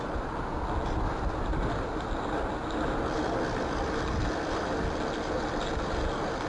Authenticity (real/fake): real